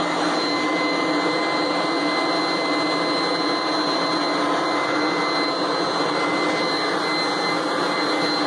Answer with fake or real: real